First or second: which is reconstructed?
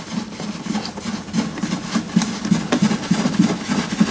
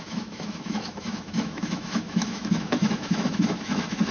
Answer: second